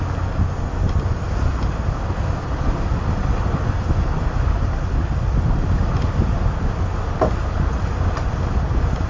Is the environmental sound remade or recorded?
recorded